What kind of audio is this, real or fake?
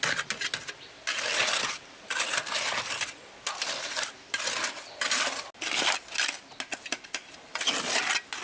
real